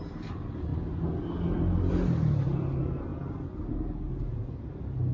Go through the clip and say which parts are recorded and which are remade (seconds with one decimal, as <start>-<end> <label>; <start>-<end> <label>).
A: 0.0-5.1 recorded